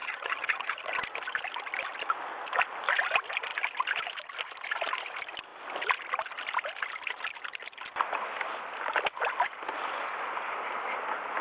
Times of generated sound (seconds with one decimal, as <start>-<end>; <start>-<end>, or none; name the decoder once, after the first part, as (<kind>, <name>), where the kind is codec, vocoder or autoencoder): 0.0-0.9 (vocoder, HiFi-GAN)